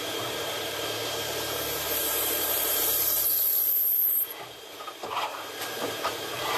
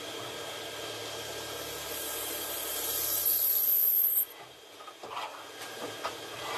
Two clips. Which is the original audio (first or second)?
second